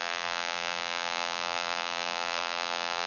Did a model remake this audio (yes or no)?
yes